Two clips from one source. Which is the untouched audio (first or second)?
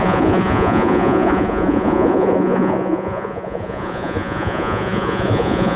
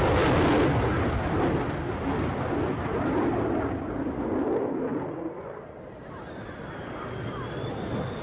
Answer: second